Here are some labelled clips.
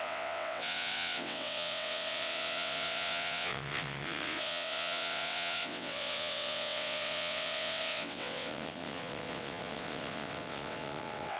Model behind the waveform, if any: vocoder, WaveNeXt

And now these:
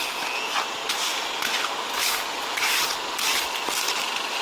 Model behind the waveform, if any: none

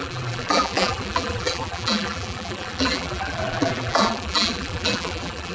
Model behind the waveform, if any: vocoder, BigVGAN v2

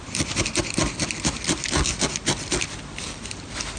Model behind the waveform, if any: none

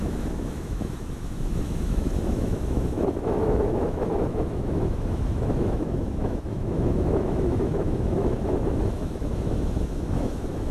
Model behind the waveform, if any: autoencoder, DAC-VAE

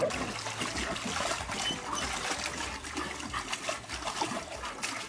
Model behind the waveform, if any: none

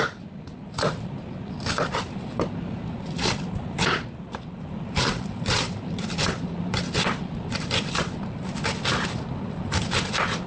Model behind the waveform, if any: vocoder, BigVGAN v2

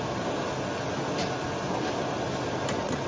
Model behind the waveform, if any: none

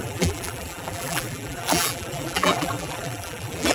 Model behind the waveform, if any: vocoder, BigVGAN v2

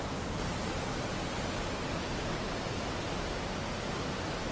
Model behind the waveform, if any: none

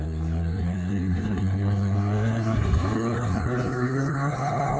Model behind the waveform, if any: codec, SNAC